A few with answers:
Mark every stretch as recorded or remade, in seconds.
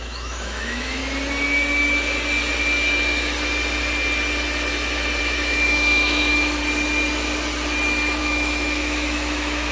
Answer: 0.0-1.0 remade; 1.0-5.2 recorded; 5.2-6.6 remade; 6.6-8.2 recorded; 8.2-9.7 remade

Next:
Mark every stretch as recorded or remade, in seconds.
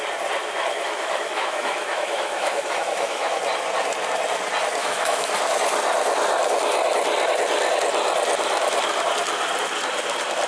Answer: 0.0-0.4 recorded; 0.4-3.4 remade; 3.4-4.8 recorded; 4.8-5.3 remade; 5.3-10.5 recorded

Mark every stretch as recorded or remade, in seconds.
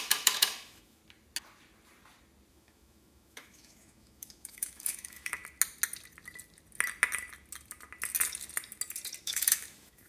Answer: 0.0-1.0 remade; 1.0-2.5 recorded; 2.5-5.4 remade; 5.4-9.2 recorded; 9.2-10.1 remade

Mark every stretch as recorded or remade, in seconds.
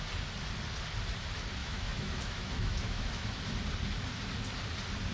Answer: 0.0-1.6 recorded; 1.6-3.4 remade; 3.4-5.1 recorded